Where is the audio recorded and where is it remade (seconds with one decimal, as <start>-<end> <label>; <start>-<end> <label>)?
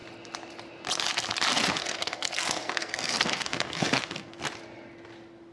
0.0-1.8 recorded; 1.8-4.4 remade; 4.4-5.5 recorded